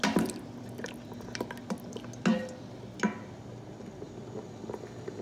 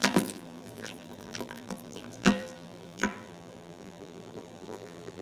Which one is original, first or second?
first